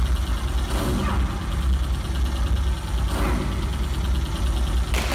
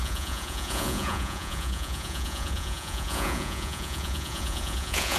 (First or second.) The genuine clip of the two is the first